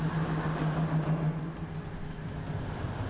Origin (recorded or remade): recorded